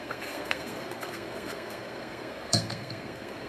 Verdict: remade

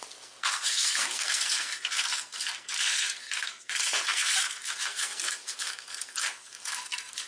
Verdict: remade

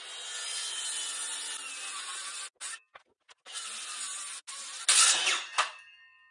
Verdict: recorded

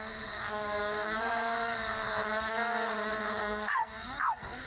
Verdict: remade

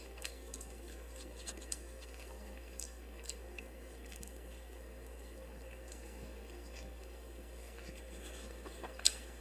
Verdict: remade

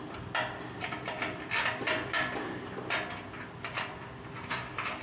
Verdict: recorded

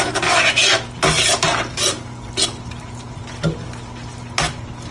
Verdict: recorded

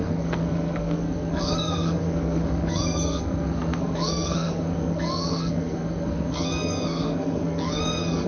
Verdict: remade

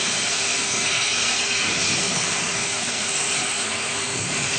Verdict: remade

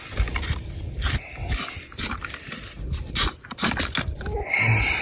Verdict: recorded